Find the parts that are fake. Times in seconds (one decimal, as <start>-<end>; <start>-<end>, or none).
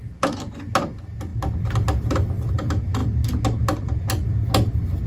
none